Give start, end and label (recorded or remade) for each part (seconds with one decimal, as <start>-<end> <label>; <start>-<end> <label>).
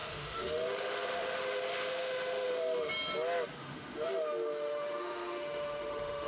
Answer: 0.0-2.9 remade; 2.9-3.6 recorded; 3.6-6.3 remade